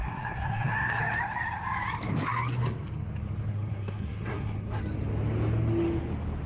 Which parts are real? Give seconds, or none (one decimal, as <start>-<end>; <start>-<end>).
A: 1.0-3.5; 4.8-6.5